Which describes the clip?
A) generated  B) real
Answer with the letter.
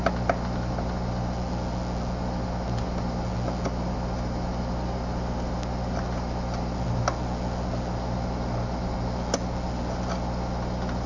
B